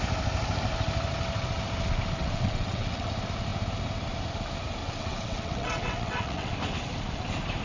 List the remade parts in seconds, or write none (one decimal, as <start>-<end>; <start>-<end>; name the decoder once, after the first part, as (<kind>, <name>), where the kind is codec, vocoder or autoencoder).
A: 2.2-3.1 (vocoder, WaveNeXt); 4.8-6.5